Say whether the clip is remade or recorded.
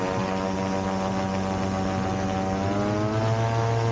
recorded